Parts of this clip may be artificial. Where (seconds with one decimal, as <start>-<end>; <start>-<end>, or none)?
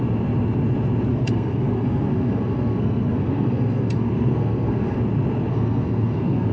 1.1-5.0; 5.5-6.5